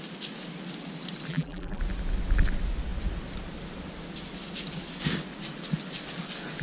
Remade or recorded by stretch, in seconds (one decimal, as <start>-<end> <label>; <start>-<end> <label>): 0.0-1.3 recorded; 1.3-1.8 remade; 1.8-6.6 recorded